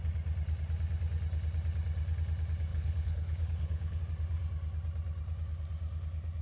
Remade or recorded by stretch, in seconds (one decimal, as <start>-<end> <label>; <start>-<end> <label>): 0.0-2.7 recorded; 2.7-4.0 remade; 4.0-6.4 recorded